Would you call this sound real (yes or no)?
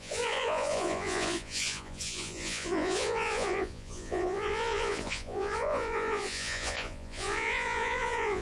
no